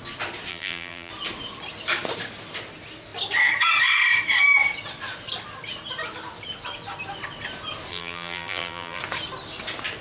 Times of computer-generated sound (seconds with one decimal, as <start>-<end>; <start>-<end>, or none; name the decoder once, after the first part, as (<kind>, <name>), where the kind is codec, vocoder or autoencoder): 0.5-1.1 (vocoder, BigVGAN v2); 7.9-9.0